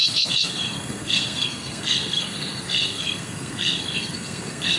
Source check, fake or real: fake